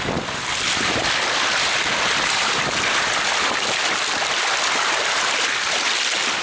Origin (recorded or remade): recorded